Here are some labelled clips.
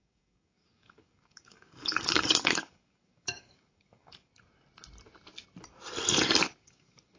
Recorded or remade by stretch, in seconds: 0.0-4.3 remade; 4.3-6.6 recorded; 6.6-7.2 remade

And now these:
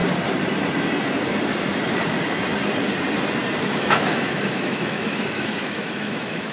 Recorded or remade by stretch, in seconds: 0.0-3.6 recorded; 3.6-6.5 remade

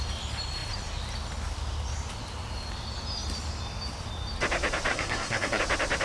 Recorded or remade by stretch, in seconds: 0.0-4.9 recorded; 4.9-5.6 remade; 5.6-6.0 recorded

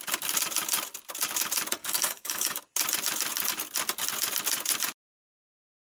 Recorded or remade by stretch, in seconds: 0.0-1.8 recorded; 1.8-2.6 remade; 2.6-5.9 recorded

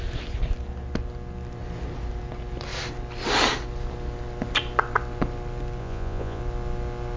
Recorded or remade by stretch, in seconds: 0.0-5.8 recorded; 5.8-6.4 remade; 6.4-7.2 recorded

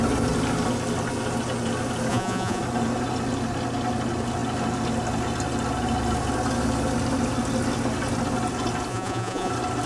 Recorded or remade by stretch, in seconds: 0.0-2.1 recorded; 2.1-2.6 remade; 2.6-8.9 recorded; 8.9-9.5 remade; 9.5-9.9 recorded

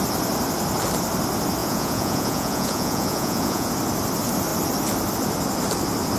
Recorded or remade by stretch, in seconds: 0.0-1.6 recorded; 1.6-3.7 remade; 3.7-6.2 recorded